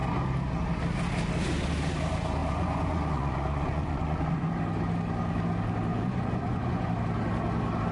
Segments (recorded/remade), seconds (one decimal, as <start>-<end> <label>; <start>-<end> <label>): 0.0-2.4 recorded; 2.4-4.5 remade; 4.5-5.9 recorded; 5.9-6.9 remade; 6.9-7.9 recorded